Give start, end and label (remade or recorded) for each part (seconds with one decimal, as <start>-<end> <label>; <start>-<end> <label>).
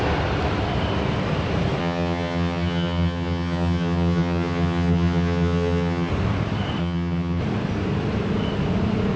0.0-1.8 recorded; 1.8-6.1 remade; 6.1-6.8 recorded; 6.8-7.4 remade; 7.4-9.2 recorded